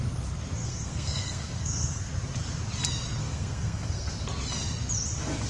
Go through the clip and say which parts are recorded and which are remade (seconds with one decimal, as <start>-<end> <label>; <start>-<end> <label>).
0.0-0.6 recorded; 0.6-2.1 remade; 2.1-3.2 recorded; 3.2-4.2 remade; 4.2-5.5 recorded